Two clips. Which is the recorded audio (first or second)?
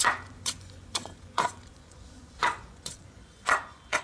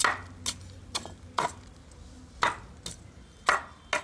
second